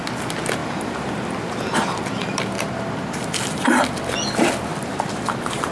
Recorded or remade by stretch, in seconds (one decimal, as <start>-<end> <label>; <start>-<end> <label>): 0.0-0.6 recorded; 0.6-4.0 remade; 4.0-4.7 recorded; 4.7-5.7 remade